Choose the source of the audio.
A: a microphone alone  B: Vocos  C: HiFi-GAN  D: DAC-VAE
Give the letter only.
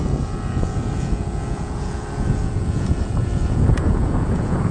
B